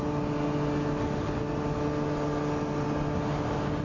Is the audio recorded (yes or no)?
yes